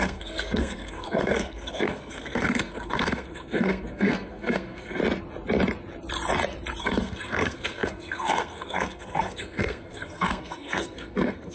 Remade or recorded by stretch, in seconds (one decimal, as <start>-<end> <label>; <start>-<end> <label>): 0.0-5.0 remade; 5.0-6.8 recorded; 6.8-11.5 remade